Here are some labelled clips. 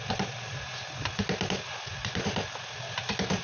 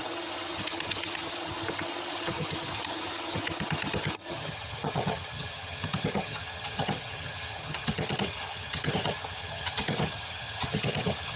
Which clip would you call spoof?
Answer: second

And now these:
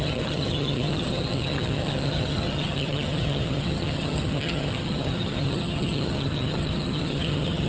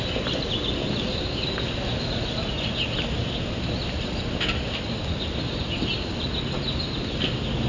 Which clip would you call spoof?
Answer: first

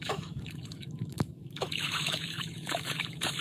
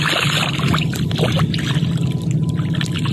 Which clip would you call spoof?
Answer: first